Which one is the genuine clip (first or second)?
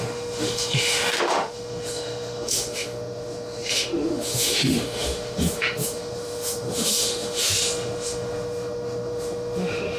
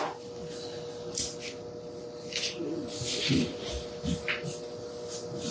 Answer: second